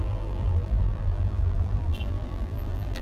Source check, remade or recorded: remade